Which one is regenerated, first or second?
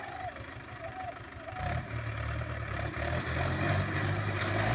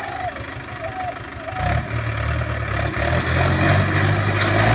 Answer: first